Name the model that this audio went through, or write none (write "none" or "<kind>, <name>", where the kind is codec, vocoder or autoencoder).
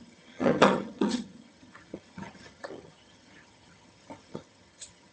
vocoder, HiFi-GAN